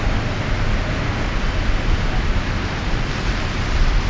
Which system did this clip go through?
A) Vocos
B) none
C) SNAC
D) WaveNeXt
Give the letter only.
B